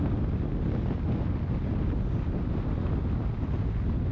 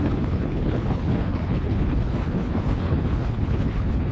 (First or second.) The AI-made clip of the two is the second